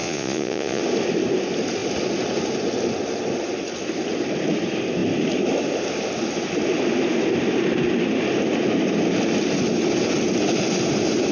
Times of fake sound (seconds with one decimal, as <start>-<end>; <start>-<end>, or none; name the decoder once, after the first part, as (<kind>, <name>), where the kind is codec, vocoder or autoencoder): 0.0-0.8 (vocoder, Vocos)